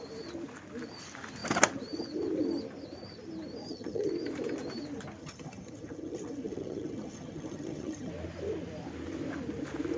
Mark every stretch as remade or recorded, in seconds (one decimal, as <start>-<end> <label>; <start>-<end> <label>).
0.0-3.6 recorded; 3.6-4.1 remade; 4.1-5.2 recorded; 5.2-8.1 remade; 8.1-10.0 recorded